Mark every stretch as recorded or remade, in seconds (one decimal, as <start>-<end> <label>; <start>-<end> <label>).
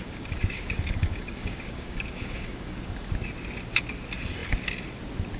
0.0-3.1 remade; 3.1-5.4 recorded